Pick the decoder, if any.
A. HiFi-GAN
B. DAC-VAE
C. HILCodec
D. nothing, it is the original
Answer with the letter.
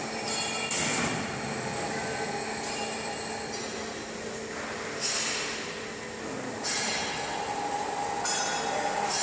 D